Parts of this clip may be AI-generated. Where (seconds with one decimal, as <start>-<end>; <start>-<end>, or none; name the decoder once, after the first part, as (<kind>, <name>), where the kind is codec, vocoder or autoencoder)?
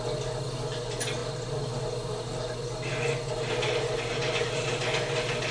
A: none